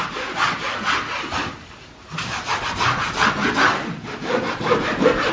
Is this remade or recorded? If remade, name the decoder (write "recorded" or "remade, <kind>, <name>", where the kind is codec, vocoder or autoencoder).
recorded